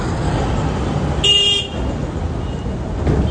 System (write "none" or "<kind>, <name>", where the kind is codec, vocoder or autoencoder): none